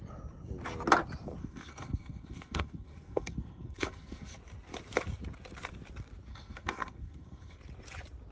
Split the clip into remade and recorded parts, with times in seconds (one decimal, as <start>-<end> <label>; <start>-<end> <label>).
0.0-1.4 recorded; 1.4-4.4 remade; 4.4-6.3 recorded; 6.3-7.6 remade; 7.6-8.3 recorded